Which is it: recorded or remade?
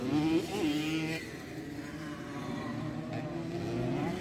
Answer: recorded